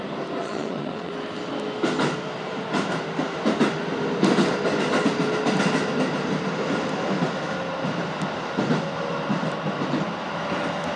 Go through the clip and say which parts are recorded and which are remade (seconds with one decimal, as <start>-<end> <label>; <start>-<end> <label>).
0.0-0.4 recorded; 0.4-1.1 remade; 1.1-11.0 recorded